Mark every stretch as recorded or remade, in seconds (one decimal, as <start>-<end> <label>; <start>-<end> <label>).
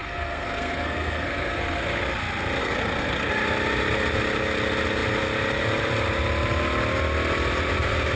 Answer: 0.0-2.0 remade; 2.0-2.6 recorded; 2.6-3.3 remade; 3.3-8.2 recorded